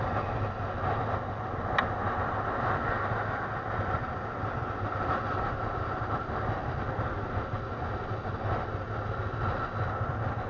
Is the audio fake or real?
real